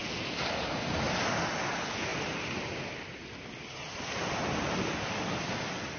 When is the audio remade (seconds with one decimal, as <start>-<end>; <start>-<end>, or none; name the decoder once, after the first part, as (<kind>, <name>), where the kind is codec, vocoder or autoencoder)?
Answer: none